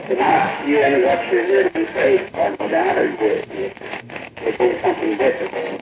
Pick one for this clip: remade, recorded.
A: remade